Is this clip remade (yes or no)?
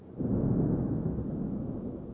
no